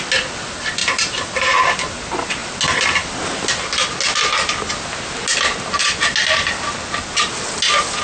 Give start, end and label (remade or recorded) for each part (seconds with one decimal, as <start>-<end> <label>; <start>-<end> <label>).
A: 0.0-0.8 recorded; 0.8-1.5 remade; 1.5-8.0 recorded